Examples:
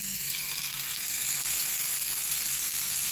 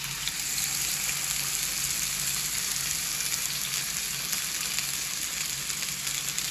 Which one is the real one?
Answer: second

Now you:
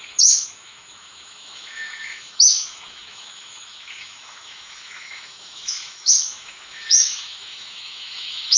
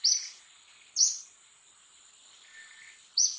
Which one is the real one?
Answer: second